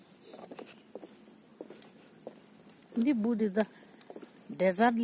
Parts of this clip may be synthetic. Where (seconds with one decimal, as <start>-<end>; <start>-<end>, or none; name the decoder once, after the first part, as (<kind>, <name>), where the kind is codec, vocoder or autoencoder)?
none